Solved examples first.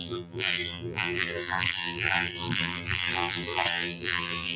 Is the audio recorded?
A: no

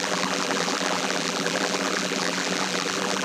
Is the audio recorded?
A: no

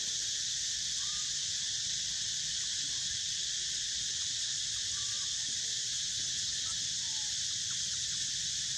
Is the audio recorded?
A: no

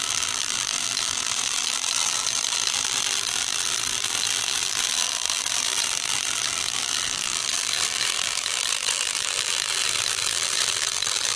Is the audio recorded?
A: no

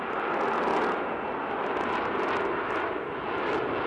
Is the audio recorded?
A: yes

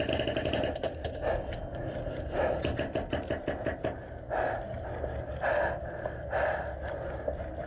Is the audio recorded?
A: yes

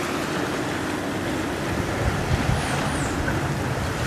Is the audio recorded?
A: yes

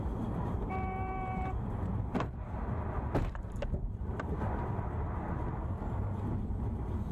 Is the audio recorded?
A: no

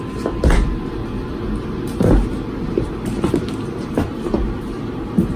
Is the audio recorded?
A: yes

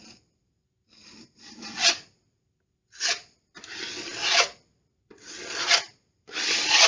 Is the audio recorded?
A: yes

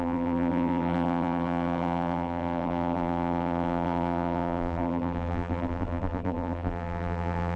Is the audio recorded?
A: no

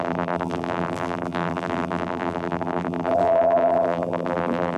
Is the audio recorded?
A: no